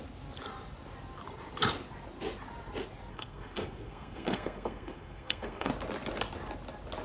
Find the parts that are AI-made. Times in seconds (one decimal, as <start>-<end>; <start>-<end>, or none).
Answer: 3.1-5.7